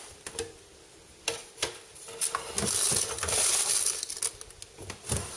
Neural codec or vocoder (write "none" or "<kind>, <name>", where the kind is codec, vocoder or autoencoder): none